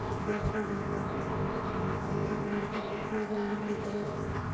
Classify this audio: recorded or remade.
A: remade